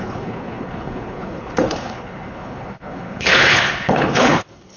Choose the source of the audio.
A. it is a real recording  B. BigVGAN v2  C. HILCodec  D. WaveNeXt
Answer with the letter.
C